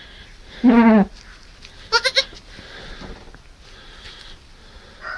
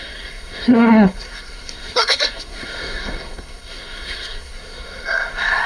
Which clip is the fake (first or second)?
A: second